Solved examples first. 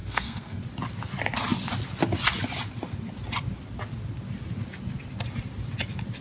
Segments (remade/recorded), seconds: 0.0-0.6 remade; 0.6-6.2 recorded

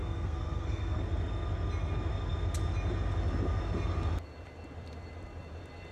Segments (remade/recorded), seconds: 0.0-1.0 remade; 1.0-5.9 recorded

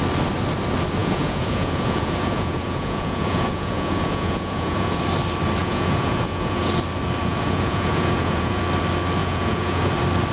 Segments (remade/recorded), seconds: 0.0-1.0 recorded; 1.0-5.0 remade; 5.0-5.6 recorded; 5.6-6.7 remade; 6.7-7.2 recorded; 7.2-8.6 remade; 8.6-9.2 recorded; 9.2-9.9 remade; 9.9-10.3 recorded

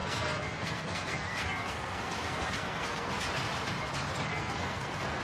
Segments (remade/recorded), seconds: 0.0-3.1 remade; 3.1-4.3 recorded; 4.3-5.2 remade

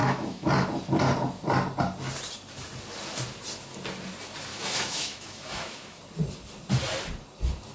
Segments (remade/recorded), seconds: 0.0-0.5 remade; 0.5-4.5 recorded; 4.5-6.0 remade; 6.0-7.7 recorded

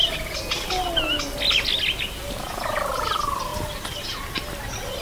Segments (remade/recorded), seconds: 0.0-2.2 recorded; 2.2-5.0 remade